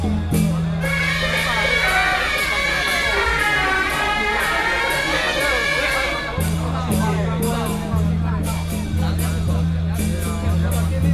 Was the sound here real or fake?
real